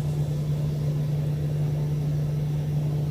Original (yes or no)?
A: yes